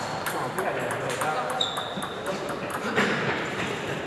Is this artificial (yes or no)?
no